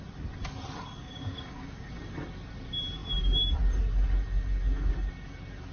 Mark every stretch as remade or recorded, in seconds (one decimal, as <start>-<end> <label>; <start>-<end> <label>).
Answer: 0.0-1.0 recorded; 1.0-1.9 remade; 1.9-5.7 recorded